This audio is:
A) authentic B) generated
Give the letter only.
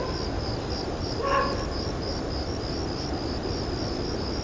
A